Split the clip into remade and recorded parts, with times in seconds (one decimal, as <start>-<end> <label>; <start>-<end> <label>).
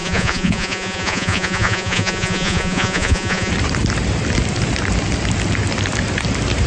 0.0-3.5 remade; 3.5-6.7 recorded